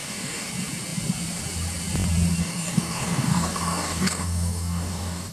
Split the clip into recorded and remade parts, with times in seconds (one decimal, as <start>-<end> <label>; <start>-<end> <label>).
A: 0.0-0.5 remade; 0.5-2.4 recorded; 2.4-5.3 remade